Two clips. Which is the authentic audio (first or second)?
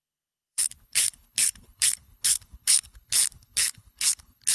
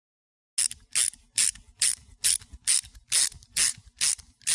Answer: second